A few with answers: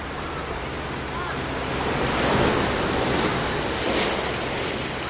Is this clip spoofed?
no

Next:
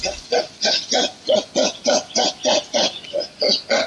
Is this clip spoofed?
yes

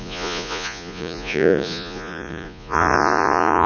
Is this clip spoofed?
yes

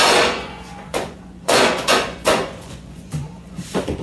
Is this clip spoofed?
yes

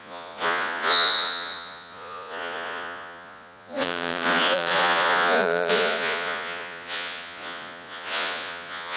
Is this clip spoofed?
yes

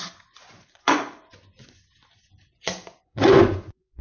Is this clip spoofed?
yes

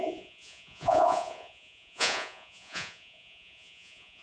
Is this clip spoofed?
yes